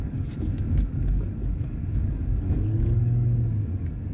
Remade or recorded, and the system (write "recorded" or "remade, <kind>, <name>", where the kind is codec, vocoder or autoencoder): remade, codec, DAC